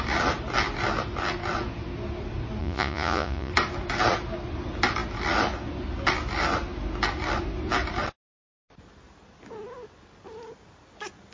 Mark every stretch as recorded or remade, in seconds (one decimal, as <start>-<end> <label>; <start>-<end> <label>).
0.0-2.6 recorded; 2.6-3.5 remade; 3.5-11.3 recorded